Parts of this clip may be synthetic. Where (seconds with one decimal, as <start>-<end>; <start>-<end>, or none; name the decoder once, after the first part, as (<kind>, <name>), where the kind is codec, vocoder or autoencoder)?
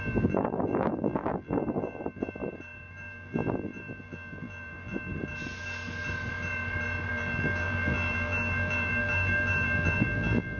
0.0-2.4 (vocoder, BigVGAN v2); 2.9-5.1; 7.1-10.6